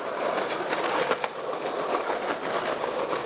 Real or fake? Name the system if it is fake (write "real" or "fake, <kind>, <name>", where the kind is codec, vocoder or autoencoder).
real